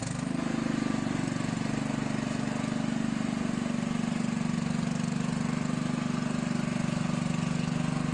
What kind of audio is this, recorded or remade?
recorded